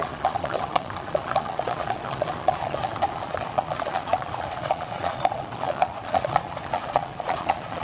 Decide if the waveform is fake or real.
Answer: fake